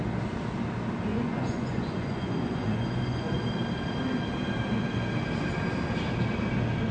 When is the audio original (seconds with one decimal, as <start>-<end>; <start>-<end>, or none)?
0.0-1.1; 3.4-6.9